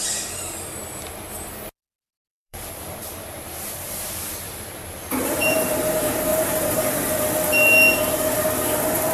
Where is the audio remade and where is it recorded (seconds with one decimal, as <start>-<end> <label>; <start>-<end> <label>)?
0.0-2.3 recorded; 2.3-5.8 remade; 5.8-6.3 recorded; 6.3-7.1 remade; 7.1-9.1 recorded